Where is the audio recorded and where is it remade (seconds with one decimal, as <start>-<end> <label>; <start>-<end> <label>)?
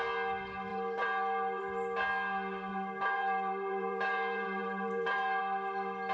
0.0-0.7 recorded; 0.7-1.6 remade; 1.6-2.7 recorded; 2.7-5.4 remade; 5.4-6.1 recorded